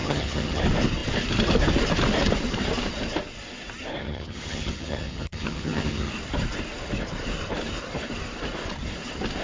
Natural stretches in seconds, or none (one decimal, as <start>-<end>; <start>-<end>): 0.6-4.0; 6.1-9.4